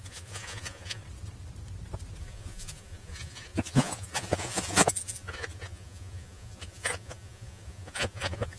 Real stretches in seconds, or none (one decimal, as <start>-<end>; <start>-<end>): 1.0-2.2